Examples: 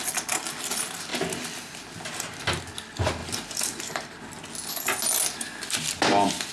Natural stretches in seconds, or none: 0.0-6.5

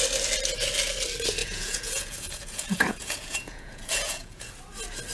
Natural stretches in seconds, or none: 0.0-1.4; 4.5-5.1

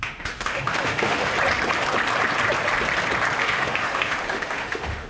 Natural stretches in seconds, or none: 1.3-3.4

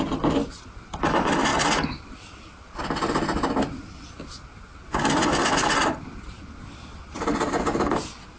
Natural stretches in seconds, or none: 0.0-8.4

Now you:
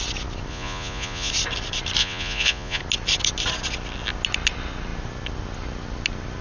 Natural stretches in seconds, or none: 0.0-0.5; 1.3-2.0; 2.8-6.4